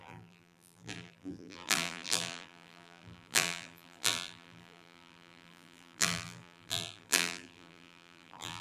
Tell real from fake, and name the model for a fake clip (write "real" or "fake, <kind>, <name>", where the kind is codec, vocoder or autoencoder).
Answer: fake, vocoder, BigVGAN v2